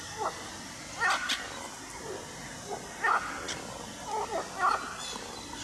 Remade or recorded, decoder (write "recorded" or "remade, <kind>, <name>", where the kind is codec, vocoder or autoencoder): recorded